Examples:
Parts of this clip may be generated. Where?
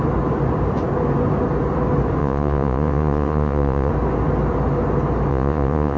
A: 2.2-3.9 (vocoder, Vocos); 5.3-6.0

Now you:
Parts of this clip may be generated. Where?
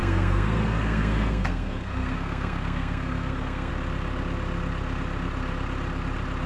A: 0.0-3.7 (codec, SNAC)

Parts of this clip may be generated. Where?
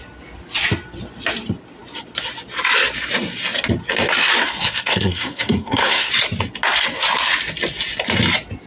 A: 4.4-6.1 (codec, SNAC)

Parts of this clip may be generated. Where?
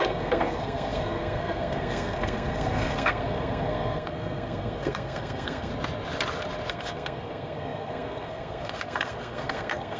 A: 0.0-5.7 (codec, SNAC); 6.7-10.0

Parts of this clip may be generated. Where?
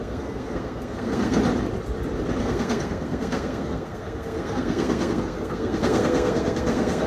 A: 0.0-1.4 (codec, SNAC); 2.4-7.1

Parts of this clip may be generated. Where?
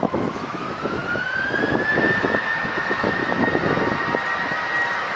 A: 0.0-1.0 (autoencoder, DAC-VAE); 2.2-3.2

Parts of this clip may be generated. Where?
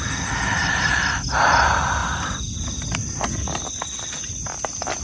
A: none